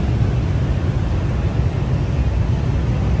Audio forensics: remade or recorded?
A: recorded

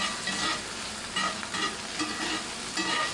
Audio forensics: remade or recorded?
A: recorded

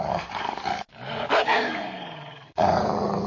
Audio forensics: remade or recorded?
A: remade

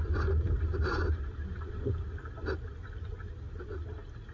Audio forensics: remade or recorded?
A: recorded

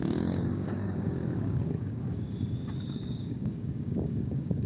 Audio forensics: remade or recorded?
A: remade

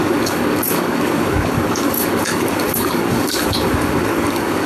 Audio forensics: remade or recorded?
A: remade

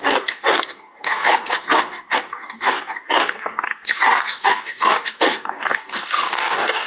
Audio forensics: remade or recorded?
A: remade